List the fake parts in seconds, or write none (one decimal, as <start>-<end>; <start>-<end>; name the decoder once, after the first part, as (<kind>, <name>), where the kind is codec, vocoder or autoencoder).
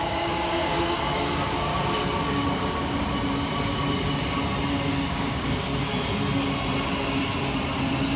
0.0-1.7 (codec, DAC); 4.9-5.7